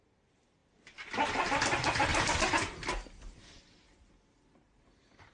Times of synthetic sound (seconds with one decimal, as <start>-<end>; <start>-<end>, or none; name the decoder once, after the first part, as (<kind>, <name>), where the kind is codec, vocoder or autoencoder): 0.0-5.3 (vocoder, BigVGAN v2)